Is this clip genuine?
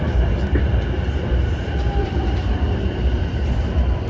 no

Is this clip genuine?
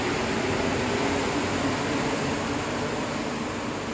yes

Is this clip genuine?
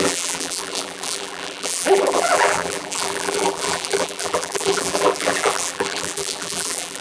no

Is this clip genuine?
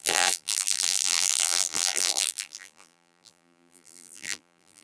no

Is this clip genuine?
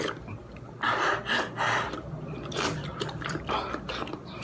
yes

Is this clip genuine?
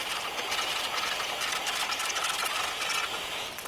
yes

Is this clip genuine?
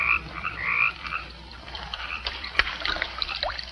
no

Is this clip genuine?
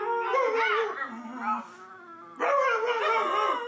yes